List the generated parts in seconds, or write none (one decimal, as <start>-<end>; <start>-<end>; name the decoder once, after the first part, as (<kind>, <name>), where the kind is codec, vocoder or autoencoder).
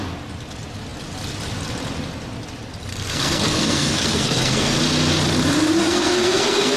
2.9-4.8 (codec, SNAC); 5.8-6.8